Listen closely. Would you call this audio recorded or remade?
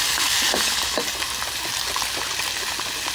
recorded